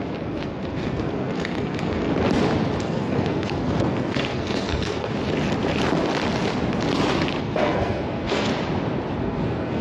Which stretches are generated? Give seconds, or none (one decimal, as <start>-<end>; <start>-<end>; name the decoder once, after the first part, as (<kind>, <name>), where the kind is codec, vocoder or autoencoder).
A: 0.0-2.1 (codec, SNAC); 2.8-5.1; 7.4-8.5; 9.2-9.8